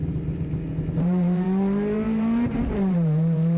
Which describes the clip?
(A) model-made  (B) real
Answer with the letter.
A